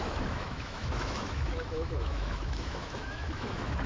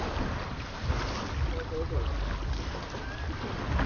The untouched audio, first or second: second